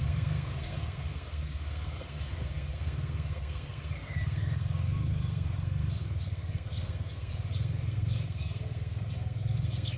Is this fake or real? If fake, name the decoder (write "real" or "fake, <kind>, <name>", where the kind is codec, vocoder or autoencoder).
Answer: fake, codec, SNAC